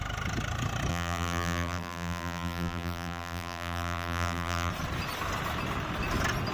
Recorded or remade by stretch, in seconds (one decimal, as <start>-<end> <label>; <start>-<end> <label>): 0.0-0.9 recorded; 0.9-4.7 remade; 4.7-6.5 recorded

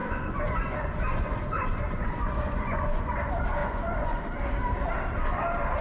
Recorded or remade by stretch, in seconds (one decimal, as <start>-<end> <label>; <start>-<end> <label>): 0.0-3.1 remade; 3.1-3.6 recorded; 3.6-4.2 remade; 4.2-5.8 recorded

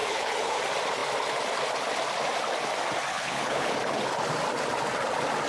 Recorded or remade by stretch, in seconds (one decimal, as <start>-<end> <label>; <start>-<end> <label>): 0.0-0.6 remade; 0.6-3.1 recorded; 3.1-3.8 remade; 3.8-5.5 recorded

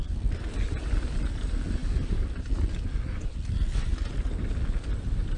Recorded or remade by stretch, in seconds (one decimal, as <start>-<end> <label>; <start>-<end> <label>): 0.0-5.4 recorded

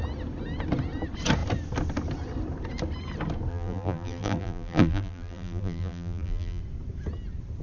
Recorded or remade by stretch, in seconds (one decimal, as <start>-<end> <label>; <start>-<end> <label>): 0.0-3.5 recorded; 3.5-6.6 remade; 6.6-7.6 recorded

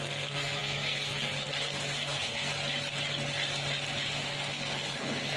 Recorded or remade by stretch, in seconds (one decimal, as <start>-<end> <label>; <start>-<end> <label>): 0.0-2.5 remade; 2.5-4.0 recorded; 4.0-5.4 remade